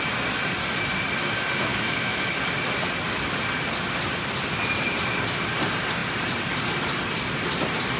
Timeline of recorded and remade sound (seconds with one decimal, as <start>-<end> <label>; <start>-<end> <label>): 0.0-1.7 recorded; 1.7-2.4 remade; 2.4-8.0 recorded